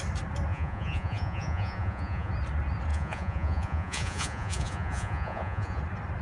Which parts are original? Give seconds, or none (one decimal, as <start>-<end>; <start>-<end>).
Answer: 0.0-0.5; 2.3-2.9; 5.8-6.2